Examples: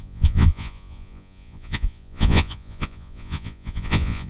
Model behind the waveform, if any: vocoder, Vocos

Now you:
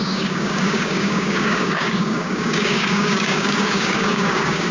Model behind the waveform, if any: codec, DAC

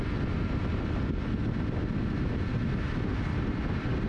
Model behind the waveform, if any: none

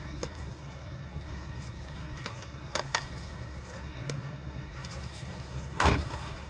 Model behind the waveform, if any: codec, SNAC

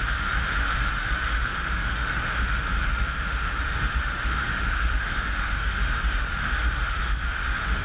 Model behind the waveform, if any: autoencoder, DAC-VAE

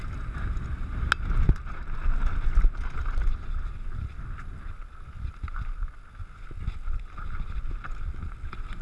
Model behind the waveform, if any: none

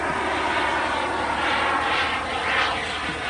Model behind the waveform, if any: none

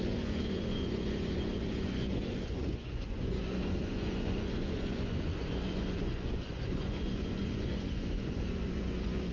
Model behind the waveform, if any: vocoder, Vocos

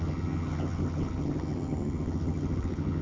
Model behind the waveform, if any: vocoder, HiFi-GAN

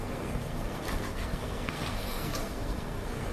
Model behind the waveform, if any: codec, SNAC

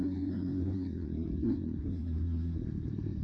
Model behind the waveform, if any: codec, SNAC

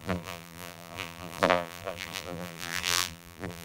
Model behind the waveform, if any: vocoder, BigVGAN v2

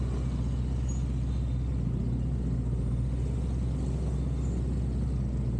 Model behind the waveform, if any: none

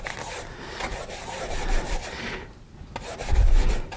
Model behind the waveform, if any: none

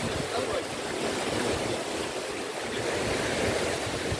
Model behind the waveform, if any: none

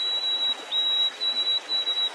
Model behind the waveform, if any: none